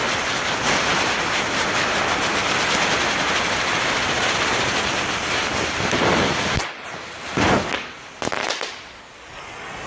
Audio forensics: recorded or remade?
recorded